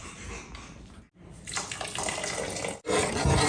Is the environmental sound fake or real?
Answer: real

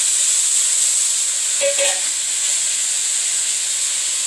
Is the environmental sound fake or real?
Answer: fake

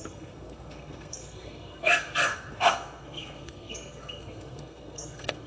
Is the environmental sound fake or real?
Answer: fake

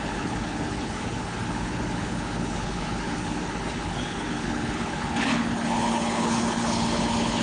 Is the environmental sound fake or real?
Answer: fake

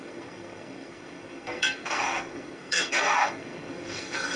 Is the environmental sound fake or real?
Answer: fake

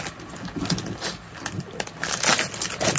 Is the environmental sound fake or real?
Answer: real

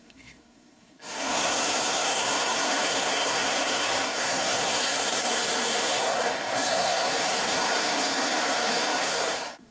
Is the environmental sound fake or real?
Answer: fake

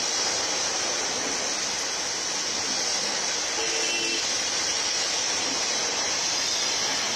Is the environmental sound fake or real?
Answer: real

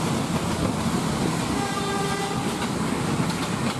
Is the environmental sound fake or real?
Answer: real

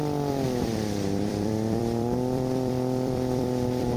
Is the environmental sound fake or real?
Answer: fake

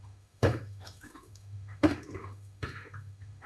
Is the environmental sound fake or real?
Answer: fake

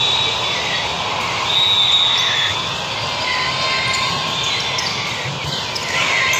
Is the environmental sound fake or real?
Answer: real